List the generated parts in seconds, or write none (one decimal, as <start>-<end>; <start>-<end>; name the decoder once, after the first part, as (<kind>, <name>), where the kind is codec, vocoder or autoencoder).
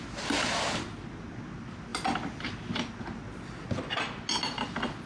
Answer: none